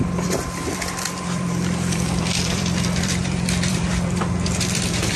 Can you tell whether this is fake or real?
fake